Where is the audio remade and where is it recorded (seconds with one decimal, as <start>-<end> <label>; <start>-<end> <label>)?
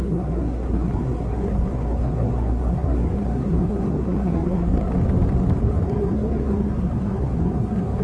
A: 0.0-4.9 remade; 4.9-5.6 recorded; 5.6-8.0 remade